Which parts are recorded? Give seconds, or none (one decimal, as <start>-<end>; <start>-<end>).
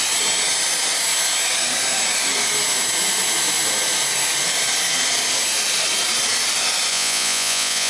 0.0-6.9